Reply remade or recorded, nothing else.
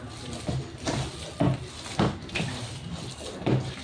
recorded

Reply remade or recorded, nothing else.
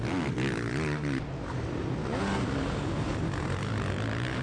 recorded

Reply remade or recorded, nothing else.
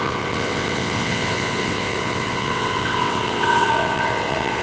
remade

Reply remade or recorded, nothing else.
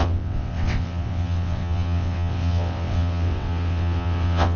remade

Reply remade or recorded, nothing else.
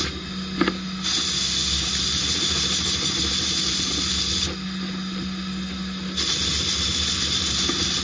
recorded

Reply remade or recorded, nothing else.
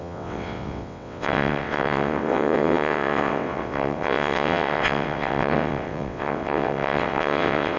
remade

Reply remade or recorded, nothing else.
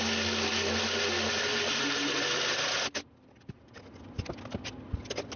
recorded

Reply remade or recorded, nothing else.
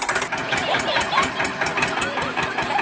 recorded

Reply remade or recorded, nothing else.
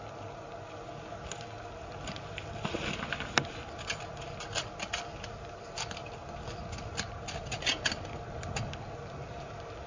recorded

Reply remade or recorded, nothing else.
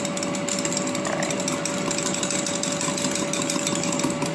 recorded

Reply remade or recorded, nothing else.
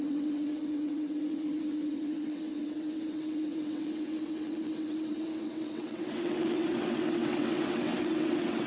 remade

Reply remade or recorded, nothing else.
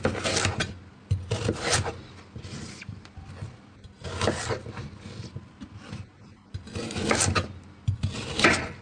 recorded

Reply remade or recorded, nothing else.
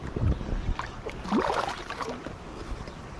recorded